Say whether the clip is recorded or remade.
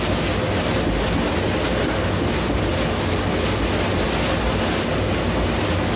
recorded